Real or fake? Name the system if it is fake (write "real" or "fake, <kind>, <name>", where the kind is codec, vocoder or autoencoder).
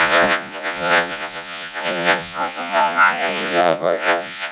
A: fake, vocoder, Vocos